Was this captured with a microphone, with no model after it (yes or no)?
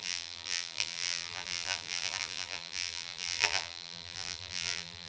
no